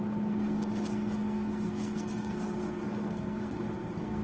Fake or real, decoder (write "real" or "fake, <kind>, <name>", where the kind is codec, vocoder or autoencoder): fake, codec, SNAC